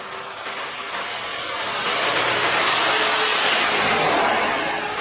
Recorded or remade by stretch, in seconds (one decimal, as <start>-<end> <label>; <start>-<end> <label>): 0.0-1.3 recorded; 1.3-2.5 remade; 2.5-5.0 recorded